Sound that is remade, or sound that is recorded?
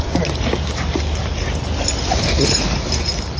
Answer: recorded